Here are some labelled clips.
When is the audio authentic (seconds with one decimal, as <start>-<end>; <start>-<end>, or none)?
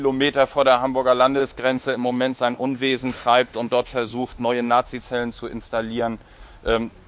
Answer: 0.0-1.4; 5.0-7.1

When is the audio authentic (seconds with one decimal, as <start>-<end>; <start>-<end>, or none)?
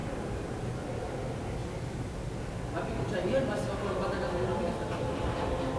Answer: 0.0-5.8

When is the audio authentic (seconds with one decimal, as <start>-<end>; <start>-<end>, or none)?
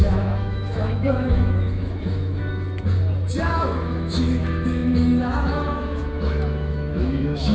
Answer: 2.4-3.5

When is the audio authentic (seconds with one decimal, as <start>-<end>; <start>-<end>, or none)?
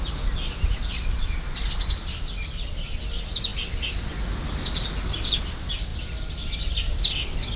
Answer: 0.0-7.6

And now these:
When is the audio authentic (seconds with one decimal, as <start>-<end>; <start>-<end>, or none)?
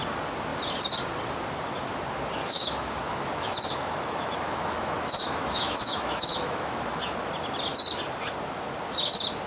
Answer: 0.0-2.4; 7.0-9.5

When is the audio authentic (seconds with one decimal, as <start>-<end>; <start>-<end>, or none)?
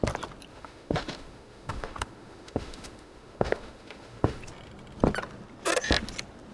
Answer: 0.0-0.5; 4.4-6.5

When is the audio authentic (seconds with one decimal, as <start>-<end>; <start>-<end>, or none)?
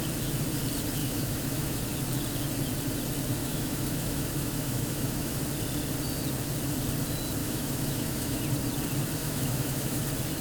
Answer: 0.0-1.0; 1.8-3.4; 5.4-7.4; 8.4-9.2; 10.0-10.4